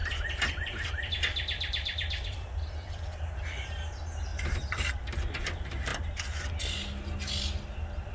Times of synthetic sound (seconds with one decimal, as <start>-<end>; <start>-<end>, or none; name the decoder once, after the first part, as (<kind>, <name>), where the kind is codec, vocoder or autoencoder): 0.0-3.0 (vocoder, BigVGAN v2); 4.3-5.4